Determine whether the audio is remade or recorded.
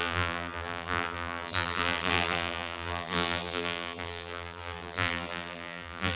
remade